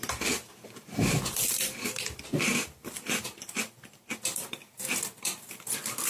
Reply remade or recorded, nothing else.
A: remade